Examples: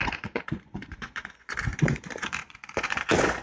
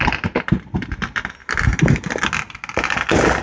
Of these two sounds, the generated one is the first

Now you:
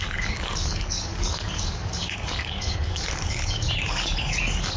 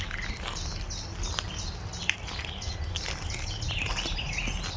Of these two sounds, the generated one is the first